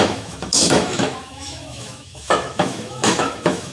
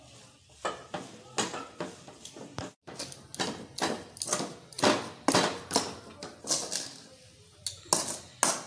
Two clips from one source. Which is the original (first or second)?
second